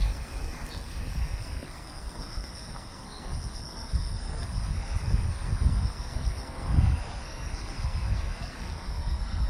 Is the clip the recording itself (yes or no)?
no